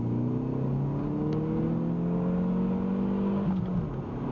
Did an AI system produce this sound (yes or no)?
no